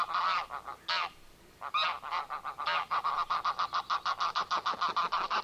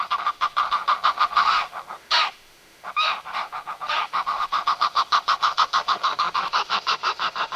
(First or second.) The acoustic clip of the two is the first